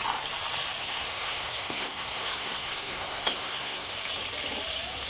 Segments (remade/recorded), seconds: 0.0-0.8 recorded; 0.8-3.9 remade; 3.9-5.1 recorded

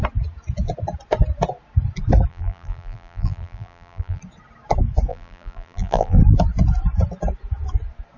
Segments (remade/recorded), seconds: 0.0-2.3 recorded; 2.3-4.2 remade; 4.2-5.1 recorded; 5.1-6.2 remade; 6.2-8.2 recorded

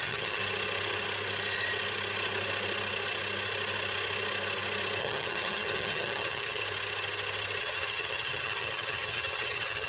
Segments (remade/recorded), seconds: 0.0-0.4 remade; 0.4-5.0 recorded; 5.0-6.6 remade; 6.6-7.6 recorded; 7.6-9.9 remade